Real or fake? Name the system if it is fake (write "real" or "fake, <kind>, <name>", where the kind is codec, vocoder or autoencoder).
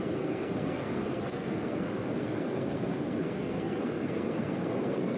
fake, codec, SNAC